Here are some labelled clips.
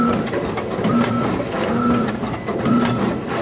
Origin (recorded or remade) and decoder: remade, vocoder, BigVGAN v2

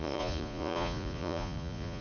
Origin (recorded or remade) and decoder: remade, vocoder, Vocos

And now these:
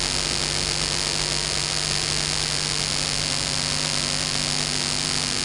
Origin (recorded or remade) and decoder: recorded